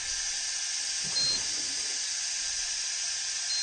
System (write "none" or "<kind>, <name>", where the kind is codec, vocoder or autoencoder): none